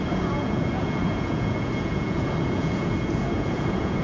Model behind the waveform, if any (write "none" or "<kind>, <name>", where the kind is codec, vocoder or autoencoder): vocoder, Vocos